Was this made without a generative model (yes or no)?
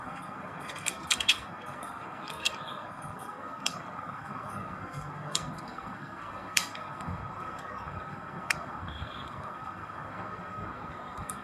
no